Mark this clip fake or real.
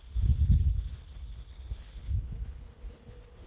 fake